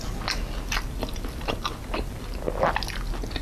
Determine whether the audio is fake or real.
real